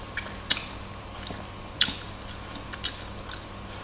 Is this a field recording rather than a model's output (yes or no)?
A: yes